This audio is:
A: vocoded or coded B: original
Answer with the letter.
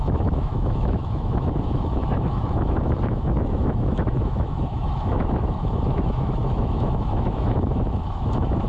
A